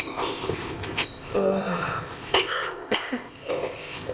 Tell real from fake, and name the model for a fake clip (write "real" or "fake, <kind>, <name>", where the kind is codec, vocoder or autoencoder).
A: fake, codec, ZipCodec